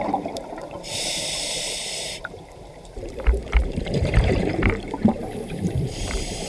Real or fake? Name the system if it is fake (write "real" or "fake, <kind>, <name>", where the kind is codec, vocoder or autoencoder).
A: fake, vocoder, BigVGAN v2